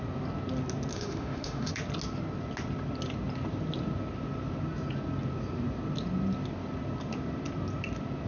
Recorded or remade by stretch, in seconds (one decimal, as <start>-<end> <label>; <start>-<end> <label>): 0.0-0.9 recorded; 0.9-1.7 remade; 1.7-8.3 recorded